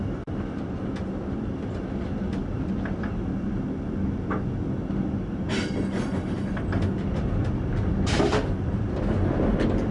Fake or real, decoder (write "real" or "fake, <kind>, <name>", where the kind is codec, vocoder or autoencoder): real